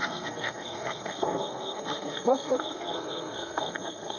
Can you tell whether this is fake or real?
fake